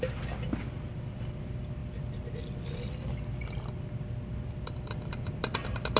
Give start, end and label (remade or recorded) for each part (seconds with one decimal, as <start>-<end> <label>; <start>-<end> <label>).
0.0-6.0 remade